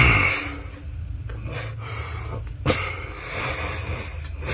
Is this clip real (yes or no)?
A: yes